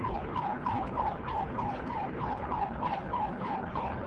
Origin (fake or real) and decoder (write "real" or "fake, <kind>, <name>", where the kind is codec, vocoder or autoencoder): fake, codec, HILCodec